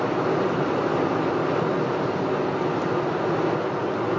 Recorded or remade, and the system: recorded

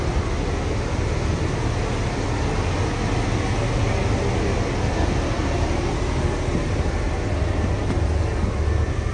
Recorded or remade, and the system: recorded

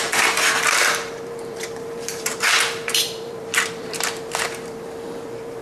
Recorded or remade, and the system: remade, vocoder, BigVGAN v2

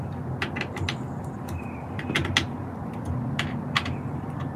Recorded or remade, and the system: recorded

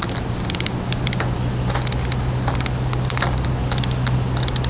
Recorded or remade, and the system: recorded